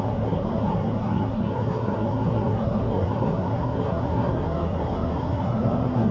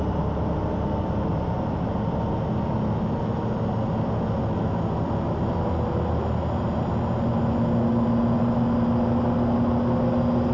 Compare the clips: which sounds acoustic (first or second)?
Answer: second